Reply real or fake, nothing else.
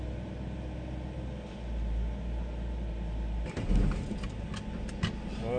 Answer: real